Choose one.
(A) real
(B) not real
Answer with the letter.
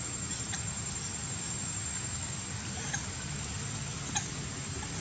A